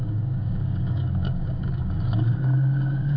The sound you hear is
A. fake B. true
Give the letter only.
A